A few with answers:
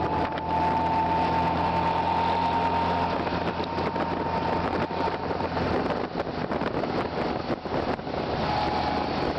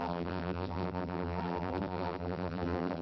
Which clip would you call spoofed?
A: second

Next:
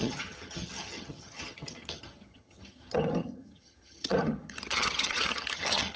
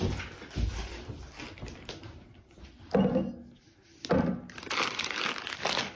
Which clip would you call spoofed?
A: first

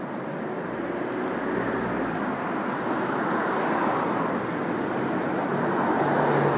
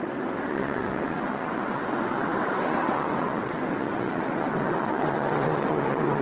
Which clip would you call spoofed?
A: second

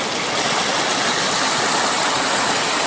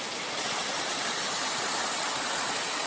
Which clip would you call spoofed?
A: second